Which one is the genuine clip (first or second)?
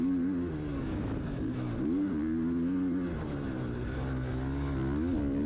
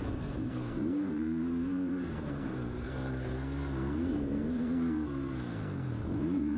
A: first